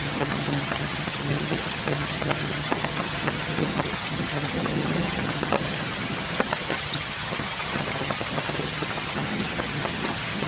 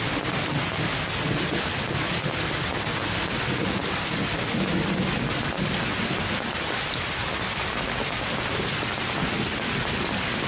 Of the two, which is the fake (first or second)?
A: first